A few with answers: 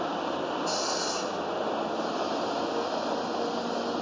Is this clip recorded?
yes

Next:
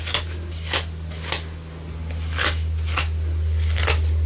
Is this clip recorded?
yes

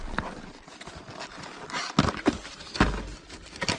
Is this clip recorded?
yes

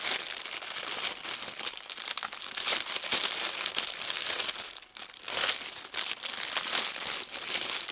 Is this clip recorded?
yes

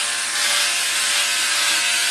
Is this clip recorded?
yes